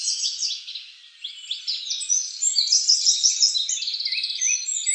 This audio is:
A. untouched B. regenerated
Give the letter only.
A